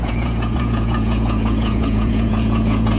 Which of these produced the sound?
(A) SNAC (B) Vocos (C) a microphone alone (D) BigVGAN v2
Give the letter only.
B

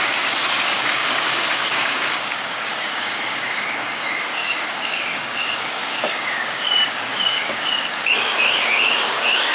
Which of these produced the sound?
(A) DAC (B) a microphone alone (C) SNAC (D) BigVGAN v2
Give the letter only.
A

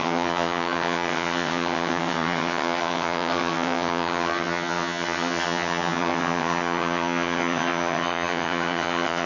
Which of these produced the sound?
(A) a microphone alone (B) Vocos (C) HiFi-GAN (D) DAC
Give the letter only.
C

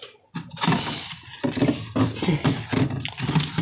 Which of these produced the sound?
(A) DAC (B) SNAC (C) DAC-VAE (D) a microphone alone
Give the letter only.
D